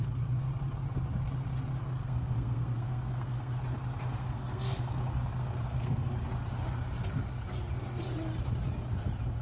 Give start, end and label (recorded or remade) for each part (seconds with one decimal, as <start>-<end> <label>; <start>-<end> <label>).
0.0-2.0 recorded; 2.0-3.6 remade; 3.6-4.2 recorded; 4.2-4.8 remade; 4.8-5.4 recorded; 5.4-6.1 remade; 6.1-9.4 recorded